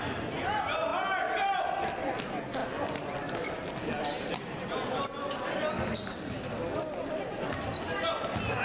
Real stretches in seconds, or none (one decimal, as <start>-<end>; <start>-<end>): 0.0-8.6

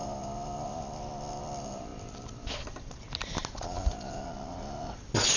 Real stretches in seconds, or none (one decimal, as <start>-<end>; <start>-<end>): 0.0-5.4

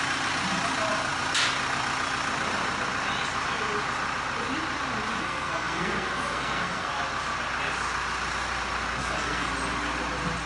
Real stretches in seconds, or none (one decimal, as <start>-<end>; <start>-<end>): 0.0-5.1; 6.9-9.0; 9.5-10.5

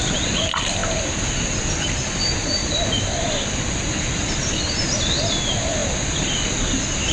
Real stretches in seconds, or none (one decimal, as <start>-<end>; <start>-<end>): 0.8-1.7; 5.8-7.1

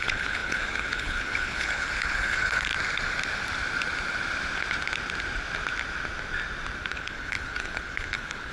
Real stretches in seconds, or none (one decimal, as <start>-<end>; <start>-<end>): 2.7-6.9

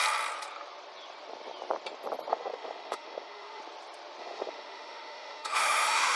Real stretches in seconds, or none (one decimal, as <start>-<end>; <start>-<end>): 0.0-2.3; 3.6-4.2